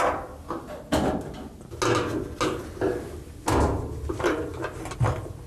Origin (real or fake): real